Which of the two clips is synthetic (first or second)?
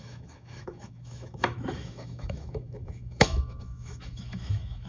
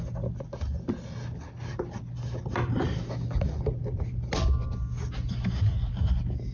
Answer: first